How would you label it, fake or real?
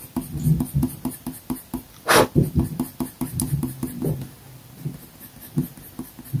real